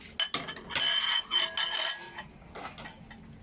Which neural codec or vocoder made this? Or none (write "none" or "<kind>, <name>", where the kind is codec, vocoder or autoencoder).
none